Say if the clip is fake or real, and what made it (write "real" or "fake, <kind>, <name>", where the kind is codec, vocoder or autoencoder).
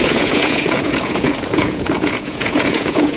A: fake, vocoder, Vocos